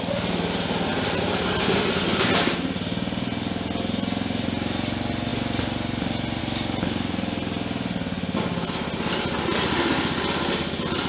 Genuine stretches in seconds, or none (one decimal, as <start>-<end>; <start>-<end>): 0.0-11.1